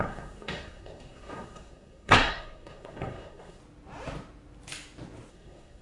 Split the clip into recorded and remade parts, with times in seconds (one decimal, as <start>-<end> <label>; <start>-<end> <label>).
0.0-3.6 remade; 3.6-5.3 recorded; 5.3-5.8 remade